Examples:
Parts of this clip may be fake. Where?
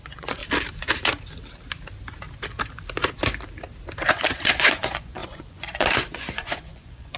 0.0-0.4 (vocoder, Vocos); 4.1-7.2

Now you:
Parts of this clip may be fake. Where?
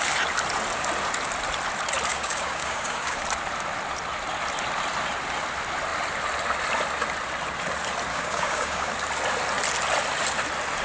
2.1-3.2 (codec, DAC); 8.1-8.9